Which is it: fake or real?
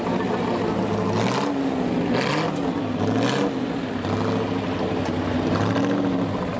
real